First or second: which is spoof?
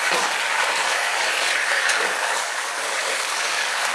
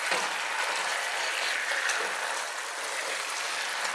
first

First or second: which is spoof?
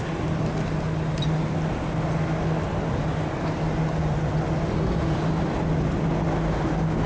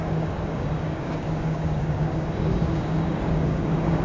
second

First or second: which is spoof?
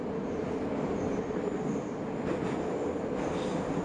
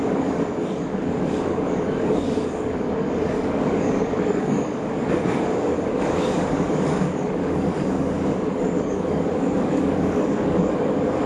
second